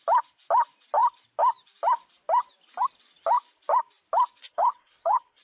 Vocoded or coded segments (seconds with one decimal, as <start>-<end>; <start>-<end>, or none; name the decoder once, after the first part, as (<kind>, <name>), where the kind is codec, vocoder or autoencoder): 4.4-5.4 (codec, HILCodec)